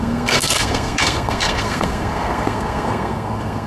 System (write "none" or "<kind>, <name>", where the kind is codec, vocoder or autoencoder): codec, SNAC